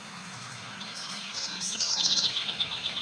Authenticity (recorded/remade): remade